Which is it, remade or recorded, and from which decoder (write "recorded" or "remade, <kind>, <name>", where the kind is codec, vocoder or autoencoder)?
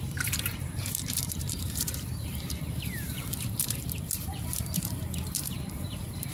remade, vocoder, BigVGAN v2